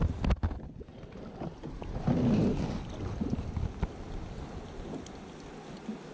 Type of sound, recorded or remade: recorded